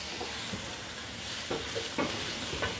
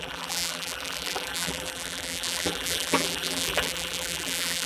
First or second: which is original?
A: first